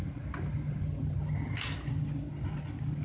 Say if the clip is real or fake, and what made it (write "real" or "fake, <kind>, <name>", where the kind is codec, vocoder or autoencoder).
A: real